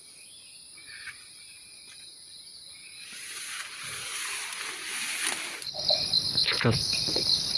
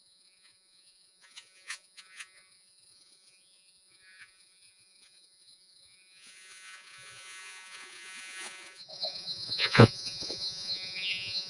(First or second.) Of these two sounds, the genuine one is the first